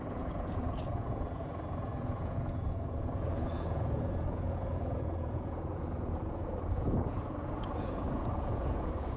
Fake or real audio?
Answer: fake